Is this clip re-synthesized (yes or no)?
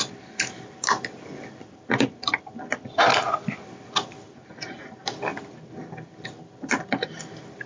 no